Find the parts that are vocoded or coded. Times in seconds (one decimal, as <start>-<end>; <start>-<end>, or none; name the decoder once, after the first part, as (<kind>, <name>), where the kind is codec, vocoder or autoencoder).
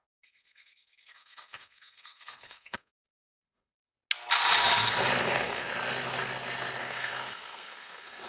0.0-3.9 (codec, SNAC); 5.2-5.7; 6.8-8.3